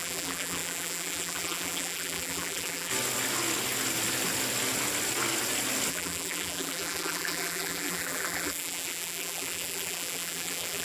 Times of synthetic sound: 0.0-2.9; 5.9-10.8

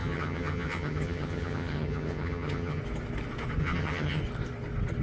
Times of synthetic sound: 0.0-2.8; 3.6-4.2

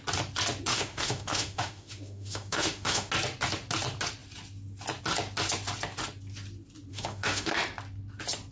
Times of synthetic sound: 0.7-3.1; 6.9-7.5